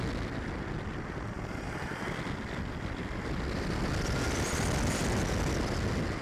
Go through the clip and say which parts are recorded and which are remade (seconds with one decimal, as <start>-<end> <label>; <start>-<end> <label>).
0.0-6.2 recorded